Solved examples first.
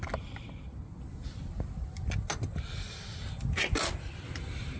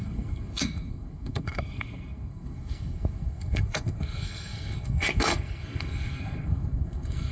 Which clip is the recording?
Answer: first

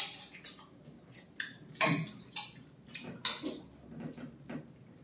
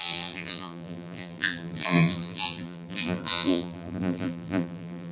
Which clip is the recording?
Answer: first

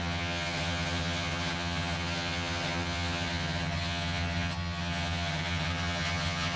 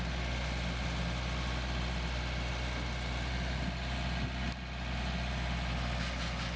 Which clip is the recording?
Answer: second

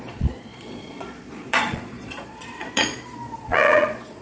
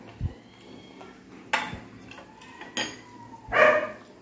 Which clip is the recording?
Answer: second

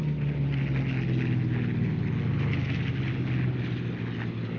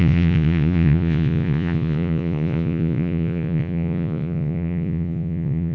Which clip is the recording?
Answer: first